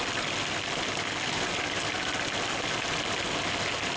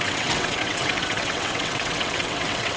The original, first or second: first